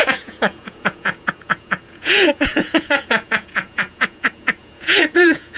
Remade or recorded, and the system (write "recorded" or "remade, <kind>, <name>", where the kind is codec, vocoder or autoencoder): remade, vocoder, Vocos